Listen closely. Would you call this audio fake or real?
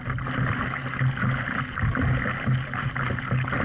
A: real